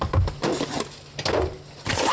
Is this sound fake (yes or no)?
no